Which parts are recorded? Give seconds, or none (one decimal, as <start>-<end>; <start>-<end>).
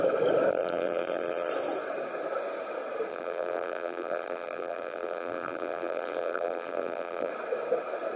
0.0-0.5; 1.5-3.1; 7.3-8.2